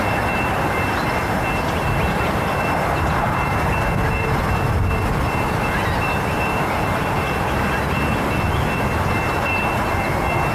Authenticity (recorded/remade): remade